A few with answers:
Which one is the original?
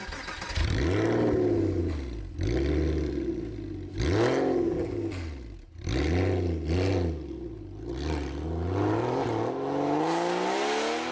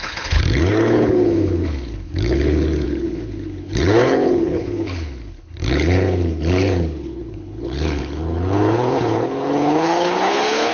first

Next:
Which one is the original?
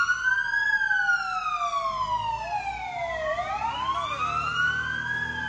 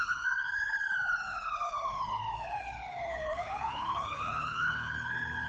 first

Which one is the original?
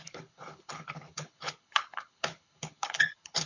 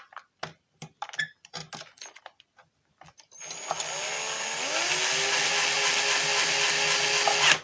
second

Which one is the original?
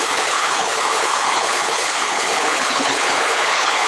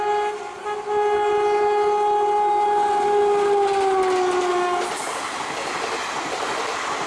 second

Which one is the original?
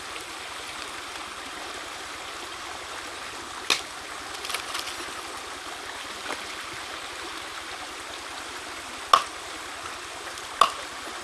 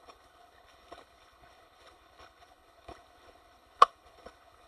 first